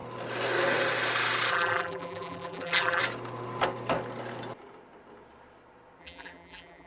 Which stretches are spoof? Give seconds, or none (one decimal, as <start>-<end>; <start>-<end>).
1.5-3.0; 6.0-6.9